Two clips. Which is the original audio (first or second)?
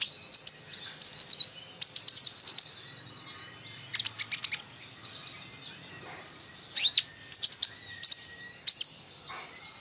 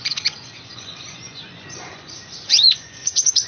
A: first